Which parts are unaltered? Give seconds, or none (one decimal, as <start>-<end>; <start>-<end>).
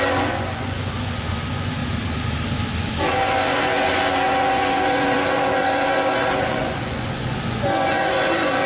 1.8-2.8